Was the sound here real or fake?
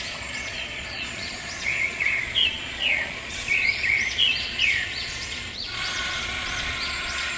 fake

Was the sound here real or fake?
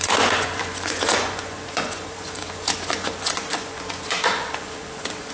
fake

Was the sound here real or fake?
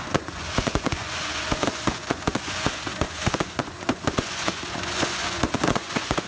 fake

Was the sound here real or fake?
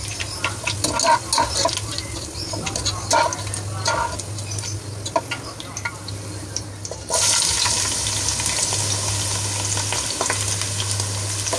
real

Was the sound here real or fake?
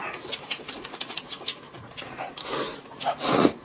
fake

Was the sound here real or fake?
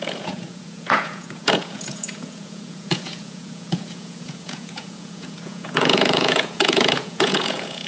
fake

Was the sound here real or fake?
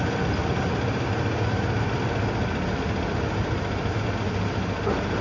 real